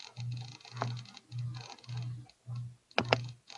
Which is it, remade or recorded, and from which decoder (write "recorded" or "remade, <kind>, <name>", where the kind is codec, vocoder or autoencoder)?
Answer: recorded